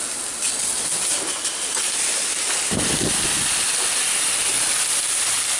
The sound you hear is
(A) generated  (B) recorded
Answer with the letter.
B